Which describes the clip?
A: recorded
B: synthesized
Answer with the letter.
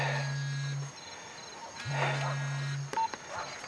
A